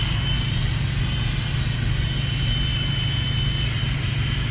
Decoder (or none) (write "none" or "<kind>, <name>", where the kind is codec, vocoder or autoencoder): none